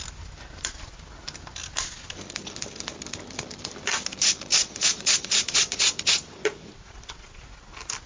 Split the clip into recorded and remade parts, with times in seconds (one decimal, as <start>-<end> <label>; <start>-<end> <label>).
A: 0.0-4.5 recorded; 4.5-7.4 remade; 7.4-8.1 recorded